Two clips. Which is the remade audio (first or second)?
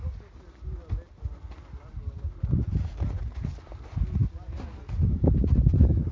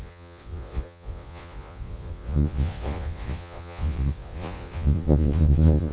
second